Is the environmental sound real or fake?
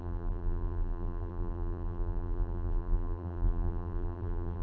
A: fake